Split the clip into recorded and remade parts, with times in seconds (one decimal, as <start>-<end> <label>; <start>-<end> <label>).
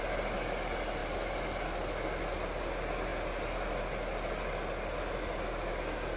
0.0-6.2 recorded